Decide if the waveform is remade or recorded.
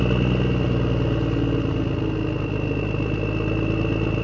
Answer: recorded